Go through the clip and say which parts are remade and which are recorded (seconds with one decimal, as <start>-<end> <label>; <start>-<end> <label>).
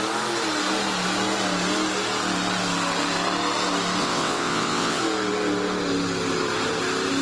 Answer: 0.0-4.0 recorded; 4.0-5.0 remade; 5.0-7.2 recorded